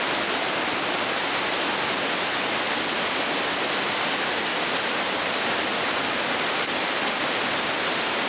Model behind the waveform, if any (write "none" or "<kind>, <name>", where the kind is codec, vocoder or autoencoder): none